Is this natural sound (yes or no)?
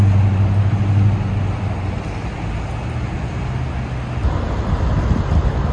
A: yes